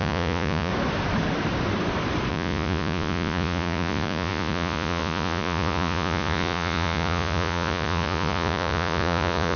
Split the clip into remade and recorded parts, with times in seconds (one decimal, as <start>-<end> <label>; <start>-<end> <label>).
0.0-0.7 remade; 0.7-2.3 recorded; 2.3-9.6 remade